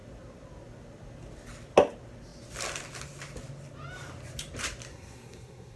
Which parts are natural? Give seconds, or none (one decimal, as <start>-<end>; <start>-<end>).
0.0-4.9